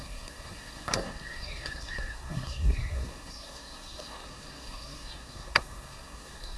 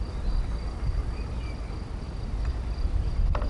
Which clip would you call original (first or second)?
second